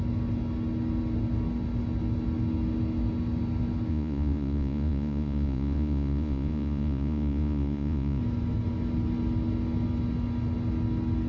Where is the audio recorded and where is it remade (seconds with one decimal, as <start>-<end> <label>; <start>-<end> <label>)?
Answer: 0.0-3.9 recorded; 3.9-8.2 remade; 8.2-11.3 recorded